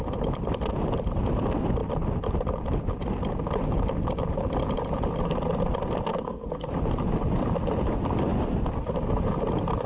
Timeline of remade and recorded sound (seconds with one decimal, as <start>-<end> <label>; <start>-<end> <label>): 0.0-6.1 recorded; 6.1-6.7 remade; 6.7-9.9 recorded